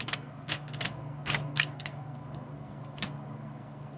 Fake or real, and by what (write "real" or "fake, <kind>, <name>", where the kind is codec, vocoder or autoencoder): fake, codec, SNAC